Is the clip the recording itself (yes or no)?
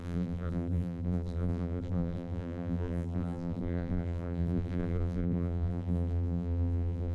no